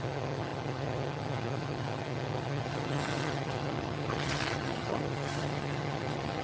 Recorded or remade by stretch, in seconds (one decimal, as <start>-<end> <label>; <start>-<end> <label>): 0.0-6.4 remade